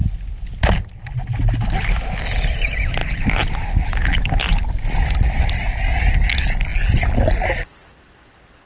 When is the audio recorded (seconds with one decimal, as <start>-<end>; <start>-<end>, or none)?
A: 0.0-8.7